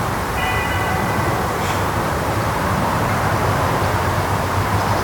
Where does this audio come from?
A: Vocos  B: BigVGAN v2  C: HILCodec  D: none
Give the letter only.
B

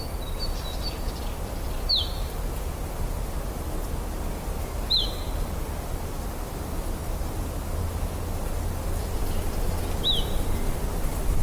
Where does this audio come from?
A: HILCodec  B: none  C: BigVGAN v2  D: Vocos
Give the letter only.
B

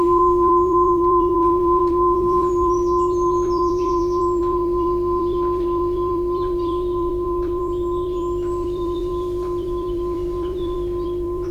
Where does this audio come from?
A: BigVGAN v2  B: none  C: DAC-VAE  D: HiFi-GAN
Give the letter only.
A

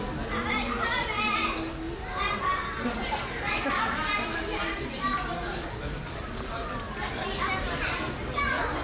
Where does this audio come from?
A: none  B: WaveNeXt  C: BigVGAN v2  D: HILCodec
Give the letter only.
A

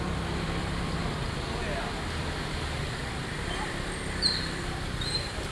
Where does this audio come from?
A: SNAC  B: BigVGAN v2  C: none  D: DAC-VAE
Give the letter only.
B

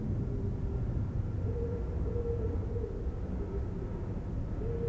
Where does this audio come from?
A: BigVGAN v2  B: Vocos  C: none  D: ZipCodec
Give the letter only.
C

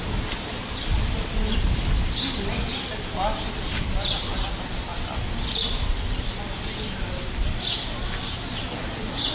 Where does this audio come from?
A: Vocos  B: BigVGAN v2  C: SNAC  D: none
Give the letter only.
D